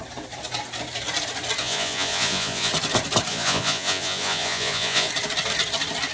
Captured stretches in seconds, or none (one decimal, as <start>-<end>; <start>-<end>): 0.0-1.6; 2.7-3.3; 5.1-6.1